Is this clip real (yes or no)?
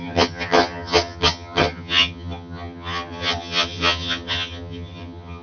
no